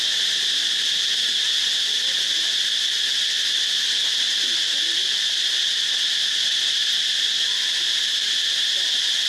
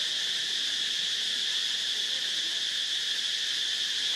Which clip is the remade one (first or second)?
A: second